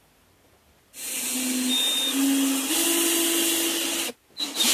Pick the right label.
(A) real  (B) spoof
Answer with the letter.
A